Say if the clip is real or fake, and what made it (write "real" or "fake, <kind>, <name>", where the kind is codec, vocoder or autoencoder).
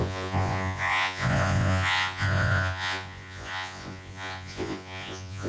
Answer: fake, vocoder, Vocos